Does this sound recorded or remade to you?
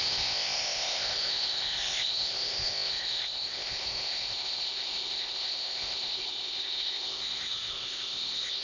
remade